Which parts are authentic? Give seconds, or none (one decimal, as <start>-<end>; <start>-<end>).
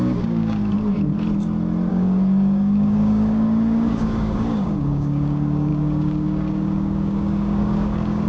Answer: 0.6-1.9